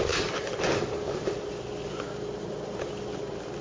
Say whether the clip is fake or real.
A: real